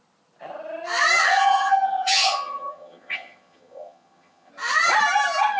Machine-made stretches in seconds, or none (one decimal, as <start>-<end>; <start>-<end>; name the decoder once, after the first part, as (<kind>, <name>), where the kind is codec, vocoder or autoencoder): 1.2-4.5 (vocoder, HiFi-GAN)